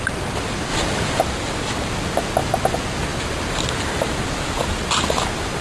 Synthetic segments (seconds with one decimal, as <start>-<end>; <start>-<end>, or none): 0.7-1.2